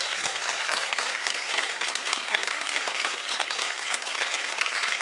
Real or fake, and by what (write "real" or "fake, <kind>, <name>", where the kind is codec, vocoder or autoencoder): fake, codec, SNAC